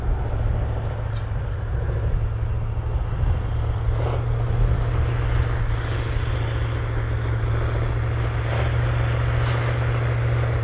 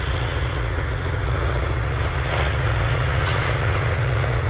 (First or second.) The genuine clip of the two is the first